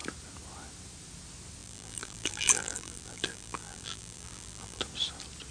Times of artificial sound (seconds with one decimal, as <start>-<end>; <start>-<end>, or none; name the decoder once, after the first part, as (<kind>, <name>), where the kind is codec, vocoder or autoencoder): 1.6-4.8 (vocoder, BigVGAN v2)